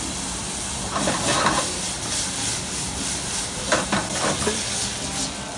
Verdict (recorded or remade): recorded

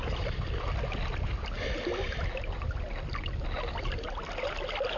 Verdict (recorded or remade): recorded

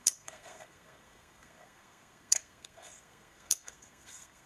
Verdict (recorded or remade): remade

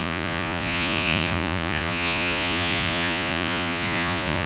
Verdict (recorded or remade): remade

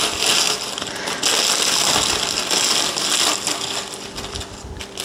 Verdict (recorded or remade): recorded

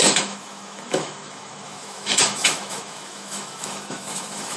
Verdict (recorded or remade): remade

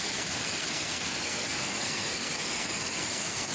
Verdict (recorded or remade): remade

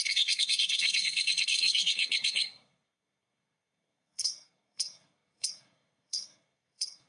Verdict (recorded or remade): remade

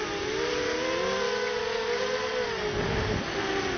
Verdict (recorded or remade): recorded